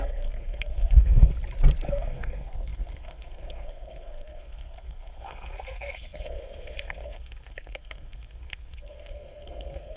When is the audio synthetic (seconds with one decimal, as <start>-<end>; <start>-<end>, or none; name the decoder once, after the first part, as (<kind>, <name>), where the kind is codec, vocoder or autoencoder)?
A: 0.0-1.3 (codec, SNAC); 1.9-10.0